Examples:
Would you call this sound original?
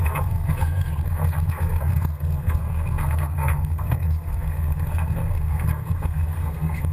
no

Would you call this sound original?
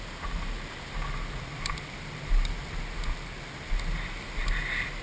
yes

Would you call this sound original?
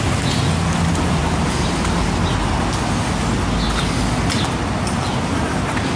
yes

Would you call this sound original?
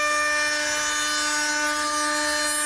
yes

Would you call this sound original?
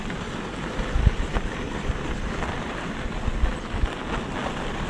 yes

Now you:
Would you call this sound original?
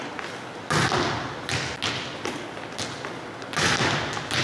yes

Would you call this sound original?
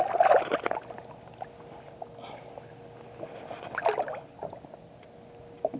yes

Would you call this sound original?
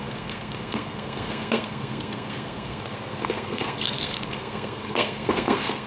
no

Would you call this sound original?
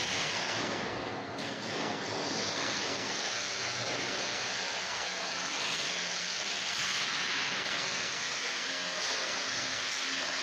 no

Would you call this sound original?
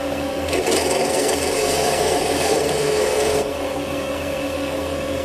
no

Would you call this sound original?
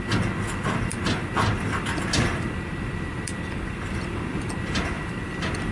yes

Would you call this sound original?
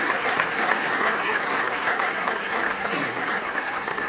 no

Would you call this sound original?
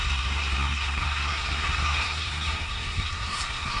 no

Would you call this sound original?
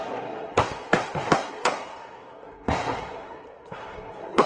no